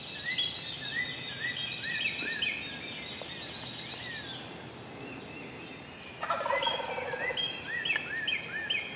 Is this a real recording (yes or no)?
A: yes